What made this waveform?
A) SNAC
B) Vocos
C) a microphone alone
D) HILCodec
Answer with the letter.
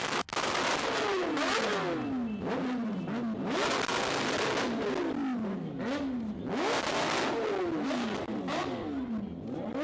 C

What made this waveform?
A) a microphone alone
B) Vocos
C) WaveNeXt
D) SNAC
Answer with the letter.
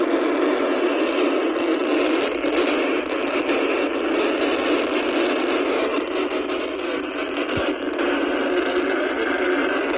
A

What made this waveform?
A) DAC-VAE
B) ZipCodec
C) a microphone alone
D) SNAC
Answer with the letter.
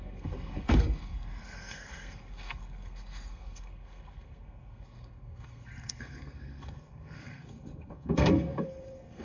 D